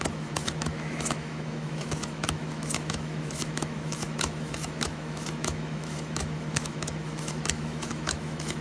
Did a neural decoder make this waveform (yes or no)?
yes